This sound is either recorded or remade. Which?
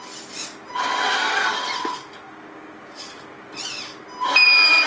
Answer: recorded